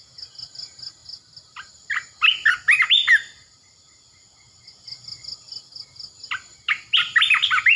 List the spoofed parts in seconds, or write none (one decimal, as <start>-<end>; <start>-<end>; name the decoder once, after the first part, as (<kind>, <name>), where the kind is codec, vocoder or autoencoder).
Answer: none